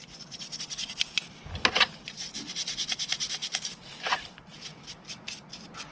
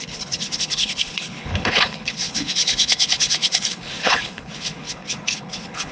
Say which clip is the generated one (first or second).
second